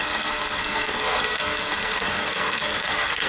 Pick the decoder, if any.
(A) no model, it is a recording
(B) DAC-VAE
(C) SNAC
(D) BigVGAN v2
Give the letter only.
C